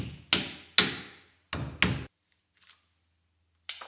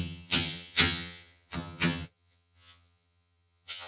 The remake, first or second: second